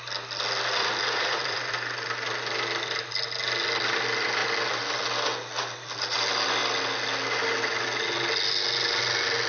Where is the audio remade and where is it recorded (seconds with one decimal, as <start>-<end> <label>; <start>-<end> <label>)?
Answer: 0.0-0.8 recorded; 0.8-1.7 remade; 1.7-4.4 recorded; 4.4-5.0 remade; 5.0-9.5 recorded